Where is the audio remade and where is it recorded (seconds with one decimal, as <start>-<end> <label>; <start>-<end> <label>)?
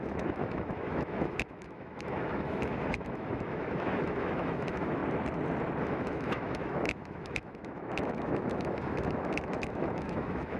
0.0-5.0 remade; 5.0-5.8 recorded; 5.8-10.6 remade